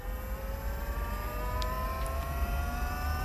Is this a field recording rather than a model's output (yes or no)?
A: yes